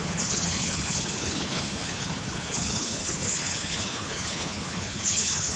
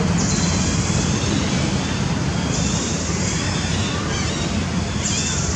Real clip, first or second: second